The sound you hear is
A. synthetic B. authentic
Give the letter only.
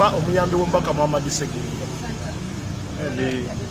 A